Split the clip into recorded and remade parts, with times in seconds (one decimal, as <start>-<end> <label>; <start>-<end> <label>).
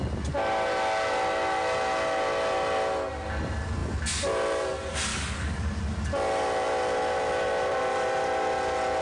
0.0-5.1 recorded; 5.1-5.7 remade; 5.7-9.0 recorded